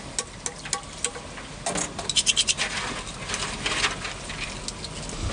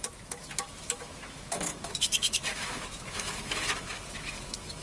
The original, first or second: first